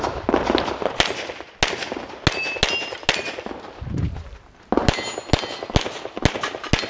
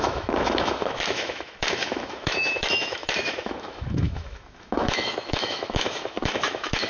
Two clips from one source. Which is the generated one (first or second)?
second